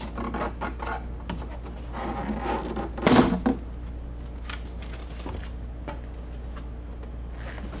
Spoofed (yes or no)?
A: no